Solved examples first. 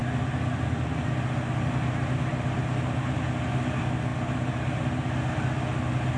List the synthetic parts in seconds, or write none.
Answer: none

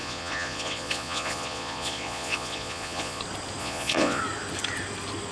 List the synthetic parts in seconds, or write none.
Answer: 0.0-3.2 (vocoder, Vocos); 3.6-4.2